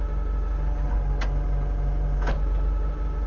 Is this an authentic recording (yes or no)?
yes